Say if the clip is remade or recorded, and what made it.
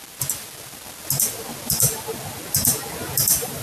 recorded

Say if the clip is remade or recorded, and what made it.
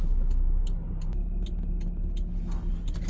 recorded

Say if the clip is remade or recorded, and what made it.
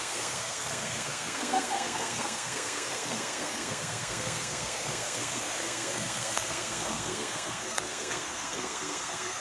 remade, codec, SNAC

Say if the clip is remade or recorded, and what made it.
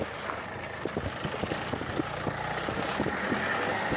recorded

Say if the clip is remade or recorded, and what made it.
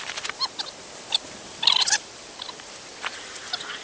remade, vocoder, BigVGAN v2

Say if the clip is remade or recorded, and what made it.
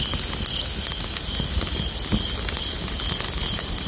recorded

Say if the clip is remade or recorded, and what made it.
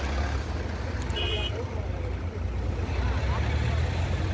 recorded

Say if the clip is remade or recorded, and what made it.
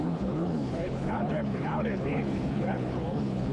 remade, codec, HILCodec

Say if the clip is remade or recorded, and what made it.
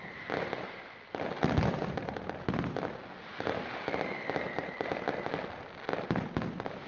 recorded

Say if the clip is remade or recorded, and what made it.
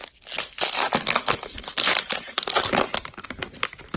recorded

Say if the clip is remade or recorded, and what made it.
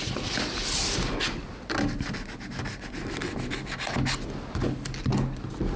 recorded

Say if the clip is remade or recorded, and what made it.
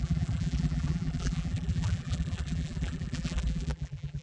remade, vocoder, BigVGAN v2